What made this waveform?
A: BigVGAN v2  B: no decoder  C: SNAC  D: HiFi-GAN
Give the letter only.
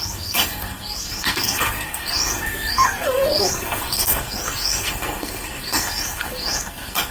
C